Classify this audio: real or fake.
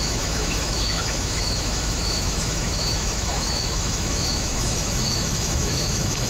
fake